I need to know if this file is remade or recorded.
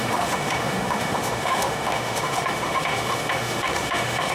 remade